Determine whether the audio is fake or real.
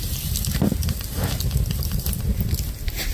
real